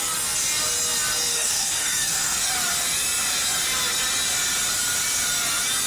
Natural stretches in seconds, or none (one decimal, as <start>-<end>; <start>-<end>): 0.0-1.3; 2.5-5.9